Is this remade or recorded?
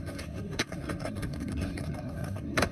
remade